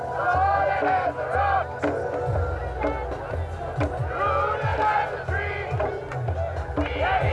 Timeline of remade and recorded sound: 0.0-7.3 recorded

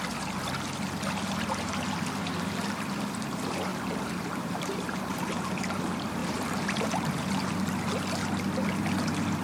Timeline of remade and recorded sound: 0.0-3.7 recorded; 3.7-5.5 remade; 5.5-6.2 recorded; 6.2-7.3 remade; 7.3-9.4 recorded

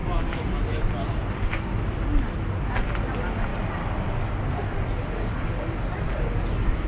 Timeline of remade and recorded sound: 0.0-1.4 remade; 1.4-2.1 recorded; 2.1-2.7 remade; 2.7-6.9 recorded

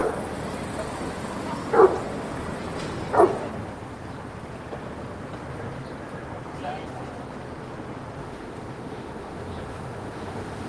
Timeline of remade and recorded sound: 0.0-8.2 recorded; 8.2-10.7 remade